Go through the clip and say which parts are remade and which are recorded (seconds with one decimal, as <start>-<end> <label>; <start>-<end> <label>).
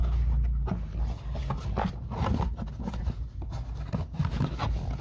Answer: 0.0-5.0 recorded